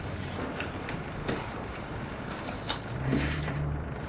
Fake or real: fake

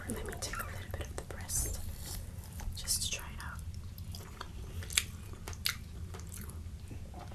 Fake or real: real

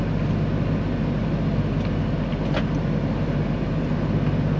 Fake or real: real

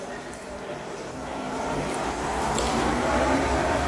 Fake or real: fake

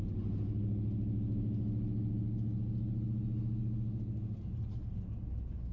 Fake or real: real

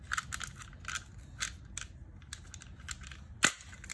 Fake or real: real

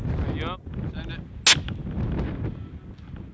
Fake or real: real